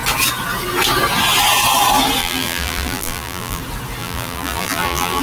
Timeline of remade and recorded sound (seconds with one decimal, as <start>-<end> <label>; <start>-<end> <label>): 0.0-2.2 recorded; 2.2-3.6 remade; 3.6-4.0 recorded; 4.0-5.2 remade